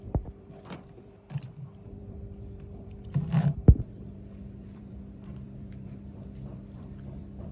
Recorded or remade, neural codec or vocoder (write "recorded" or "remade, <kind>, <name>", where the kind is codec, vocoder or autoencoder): remade, vocoder, BigVGAN v2